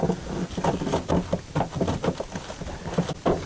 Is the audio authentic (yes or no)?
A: yes